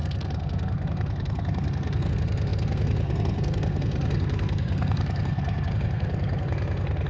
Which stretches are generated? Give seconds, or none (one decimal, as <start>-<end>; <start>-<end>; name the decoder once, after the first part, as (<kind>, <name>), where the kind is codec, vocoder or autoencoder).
0.0-7.1 (codec, SNAC)